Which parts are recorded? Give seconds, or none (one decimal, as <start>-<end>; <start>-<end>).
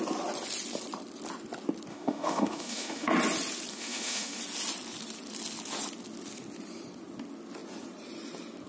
0.0-1.9; 3.1-3.7; 4.4-8.7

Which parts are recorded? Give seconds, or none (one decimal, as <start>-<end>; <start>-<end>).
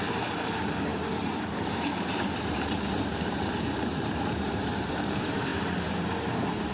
none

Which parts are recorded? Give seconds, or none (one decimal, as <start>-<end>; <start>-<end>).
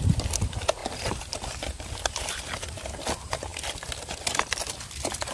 0.0-5.3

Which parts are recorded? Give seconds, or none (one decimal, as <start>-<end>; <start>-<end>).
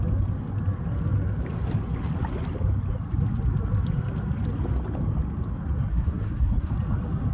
0.0-5.9; 6.7-7.3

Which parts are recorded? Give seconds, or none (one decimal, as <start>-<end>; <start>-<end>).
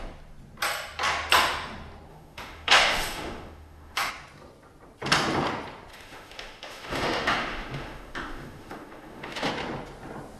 0.0-2.1; 4.1-5.9; 9.5-10.4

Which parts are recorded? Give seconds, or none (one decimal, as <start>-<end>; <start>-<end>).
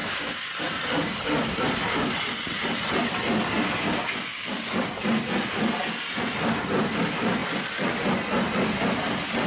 0.5-9.5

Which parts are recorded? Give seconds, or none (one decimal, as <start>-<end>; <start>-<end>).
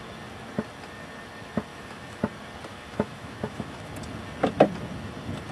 0.0-1.7; 2.2-2.7; 3.9-5.5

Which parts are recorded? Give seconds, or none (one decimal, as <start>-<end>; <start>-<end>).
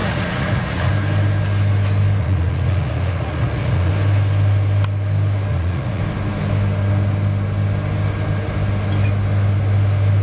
0.9-2.2; 3.9-5.5; 6.0-10.2